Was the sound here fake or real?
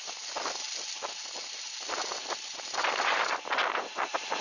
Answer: real